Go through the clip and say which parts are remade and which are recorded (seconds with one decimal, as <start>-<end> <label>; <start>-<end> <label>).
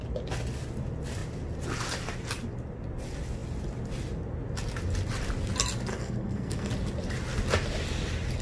0.0-5.9 recorded; 5.9-6.7 remade; 6.7-8.4 recorded